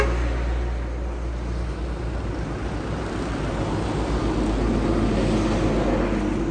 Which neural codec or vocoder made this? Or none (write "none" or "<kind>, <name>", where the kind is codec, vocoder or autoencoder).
none